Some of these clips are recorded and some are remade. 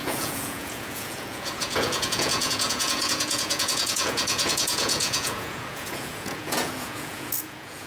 remade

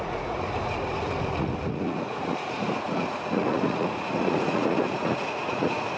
remade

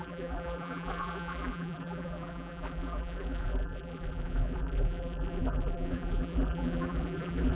remade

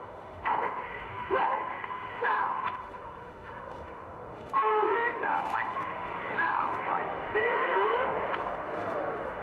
remade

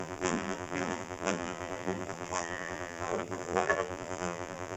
remade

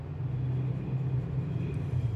recorded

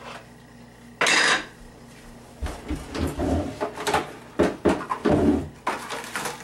recorded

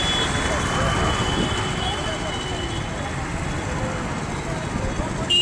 recorded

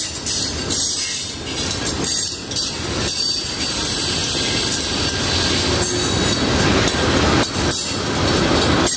recorded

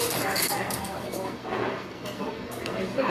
remade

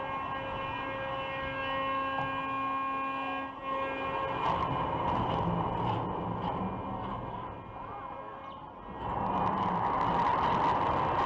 recorded